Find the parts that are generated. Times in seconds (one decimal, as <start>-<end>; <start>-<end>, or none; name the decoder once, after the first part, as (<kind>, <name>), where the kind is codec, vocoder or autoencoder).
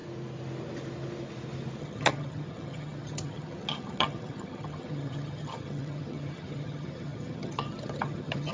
1.8-8.5 (vocoder, HiFi-GAN)